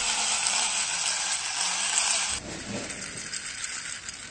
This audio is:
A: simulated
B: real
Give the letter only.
B